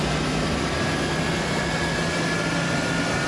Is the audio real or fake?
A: real